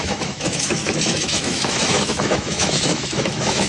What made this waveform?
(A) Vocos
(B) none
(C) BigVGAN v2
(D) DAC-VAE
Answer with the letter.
D